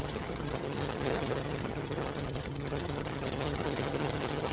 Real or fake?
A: fake